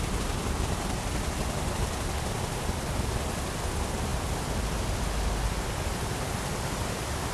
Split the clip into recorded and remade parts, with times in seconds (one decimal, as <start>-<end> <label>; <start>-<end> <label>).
0.0-7.3 recorded